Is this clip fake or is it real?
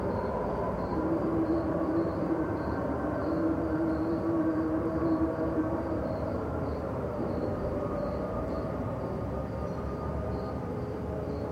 fake